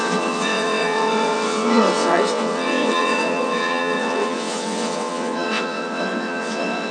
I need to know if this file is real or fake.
fake